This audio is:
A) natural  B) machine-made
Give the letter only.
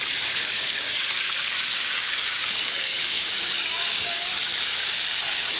B